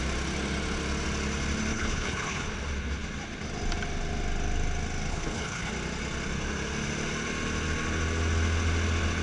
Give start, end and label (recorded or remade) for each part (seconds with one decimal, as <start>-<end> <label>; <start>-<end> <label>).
0.0-1.7 recorded; 1.7-2.5 remade; 2.5-5.1 recorded; 5.1-5.7 remade; 5.7-9.2 recorded